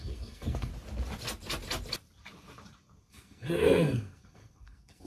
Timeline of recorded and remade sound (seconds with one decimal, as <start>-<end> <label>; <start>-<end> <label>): 0.0-0.7 remade; 0.7-3.1 recorded; 3.1-5.1 remade